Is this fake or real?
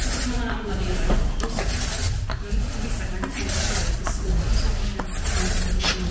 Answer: real